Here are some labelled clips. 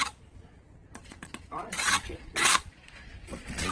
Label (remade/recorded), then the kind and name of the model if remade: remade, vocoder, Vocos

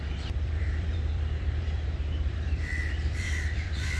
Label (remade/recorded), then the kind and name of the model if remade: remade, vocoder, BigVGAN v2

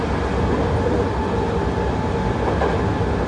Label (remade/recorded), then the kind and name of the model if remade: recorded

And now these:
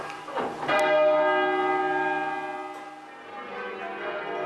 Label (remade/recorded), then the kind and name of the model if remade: recorded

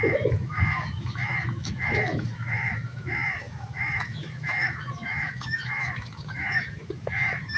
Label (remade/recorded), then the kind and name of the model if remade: remade, autoencoder, DAC-VAE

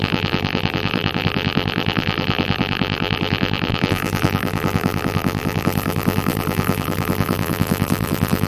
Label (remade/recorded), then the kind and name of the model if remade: remade, vocoder, BigVGAN v2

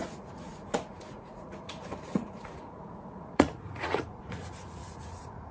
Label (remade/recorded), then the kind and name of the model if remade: remade, vocoder, Vocos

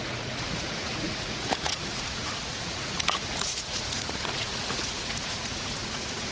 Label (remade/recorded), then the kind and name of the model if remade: remade, vocoder, Vocos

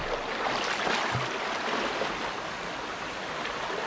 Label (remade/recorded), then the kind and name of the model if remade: recorded